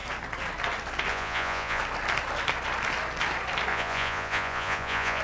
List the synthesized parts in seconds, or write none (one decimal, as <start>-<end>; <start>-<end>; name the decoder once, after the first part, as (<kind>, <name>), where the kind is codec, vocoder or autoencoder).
1.1-1.8 (vocoder, Vocos); 3.7-5.2